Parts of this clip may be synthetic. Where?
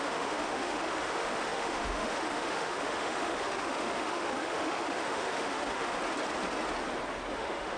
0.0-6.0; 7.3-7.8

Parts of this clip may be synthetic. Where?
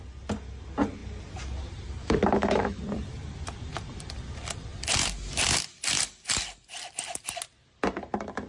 2.0-2.8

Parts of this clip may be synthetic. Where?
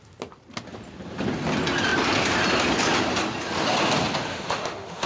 4.3-5.1